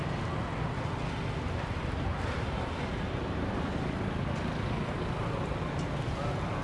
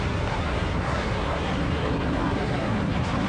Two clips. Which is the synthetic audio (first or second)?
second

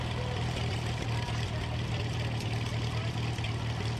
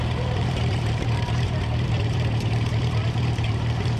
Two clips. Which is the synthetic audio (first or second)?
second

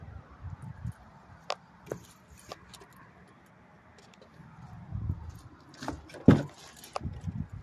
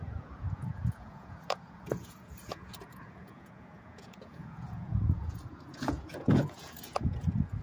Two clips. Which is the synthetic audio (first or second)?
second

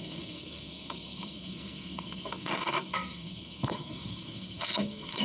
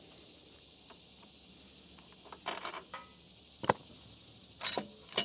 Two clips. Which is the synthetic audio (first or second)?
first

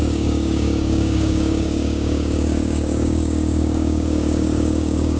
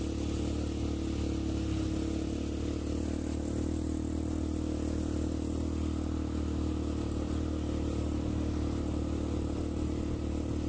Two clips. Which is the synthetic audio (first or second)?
first